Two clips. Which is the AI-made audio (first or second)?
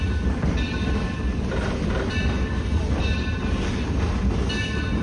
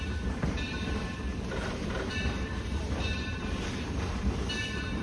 second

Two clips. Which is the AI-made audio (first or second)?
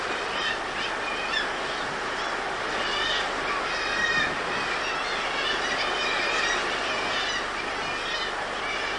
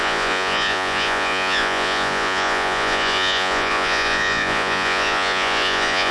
second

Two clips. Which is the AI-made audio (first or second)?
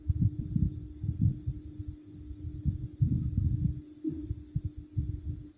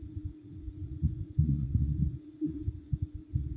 second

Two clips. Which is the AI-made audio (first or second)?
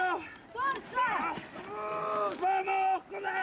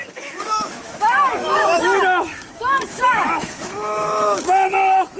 second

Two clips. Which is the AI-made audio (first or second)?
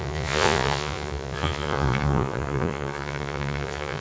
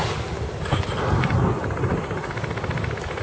first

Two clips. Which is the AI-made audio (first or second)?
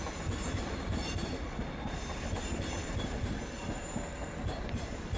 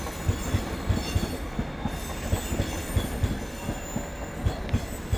first